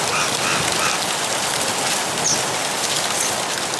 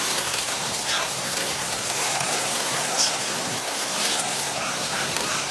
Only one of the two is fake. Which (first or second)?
second